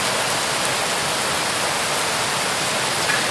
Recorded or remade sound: recorded